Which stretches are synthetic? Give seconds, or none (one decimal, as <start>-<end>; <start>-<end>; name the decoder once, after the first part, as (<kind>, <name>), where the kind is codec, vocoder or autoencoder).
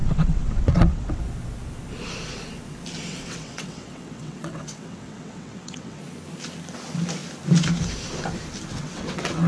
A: 0.0-1.2 (vocoder, WaveNeXt); 3.1-6.0; 8.7-9.5